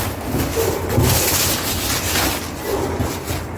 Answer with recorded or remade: recorded